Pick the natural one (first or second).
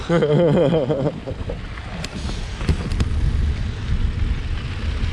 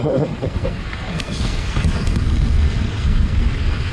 first